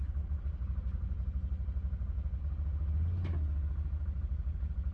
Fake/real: real